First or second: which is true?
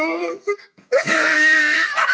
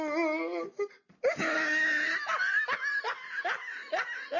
second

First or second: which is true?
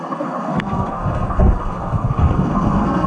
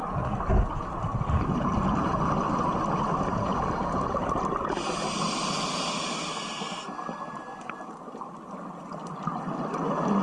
second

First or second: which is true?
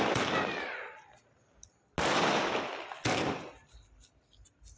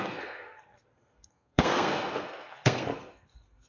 first